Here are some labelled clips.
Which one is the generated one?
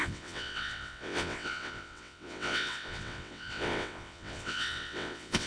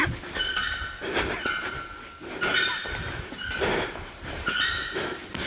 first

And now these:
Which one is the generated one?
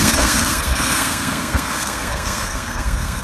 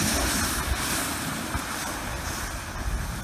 first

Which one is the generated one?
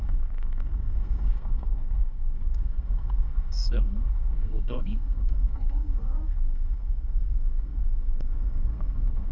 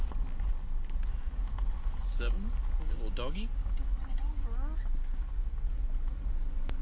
first